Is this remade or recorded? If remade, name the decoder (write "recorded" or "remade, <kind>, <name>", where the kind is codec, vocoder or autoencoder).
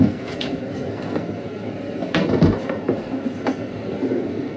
remade, codec, SNAC